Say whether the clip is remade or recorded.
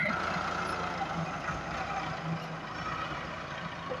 recorded